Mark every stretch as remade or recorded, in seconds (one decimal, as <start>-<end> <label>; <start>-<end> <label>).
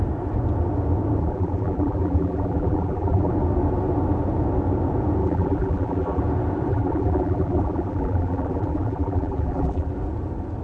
0.0-1.2 recorded; 1.2-3.3 remade; 3.3-5.2 recorded; 5.2-6.2 remade; 6.2-6.7 recorded; 6.7-9.9 remade; 9.9-10.6 recorded